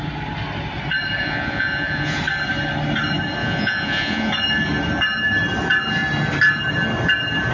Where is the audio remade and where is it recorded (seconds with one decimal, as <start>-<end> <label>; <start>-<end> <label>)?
0.0-1.2 recorded; 1.2-2.2 remade; 2.2-3.4 recorded; 3.4-4.3 remade; 4.3-7.5 recorded